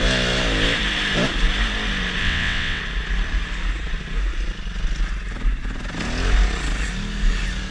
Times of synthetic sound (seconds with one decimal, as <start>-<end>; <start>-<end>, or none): 2.2-2.8